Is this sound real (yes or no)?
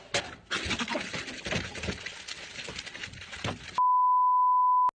yes